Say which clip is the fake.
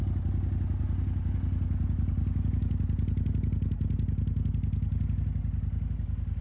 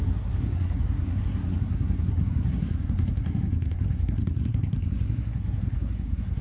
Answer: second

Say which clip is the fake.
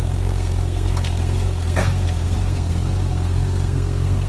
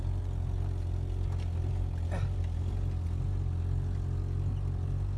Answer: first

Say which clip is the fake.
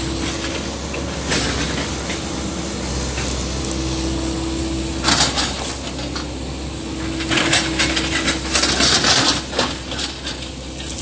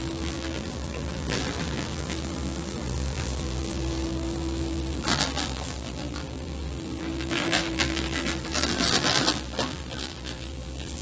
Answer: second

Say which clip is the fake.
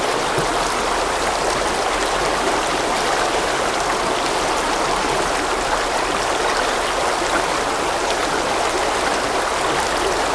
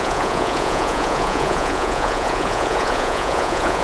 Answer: second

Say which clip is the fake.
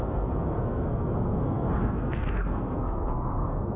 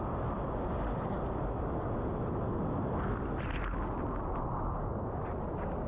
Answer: first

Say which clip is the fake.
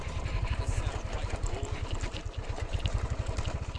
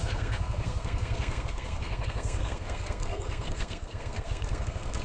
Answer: second